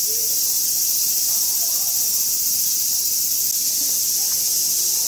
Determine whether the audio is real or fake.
real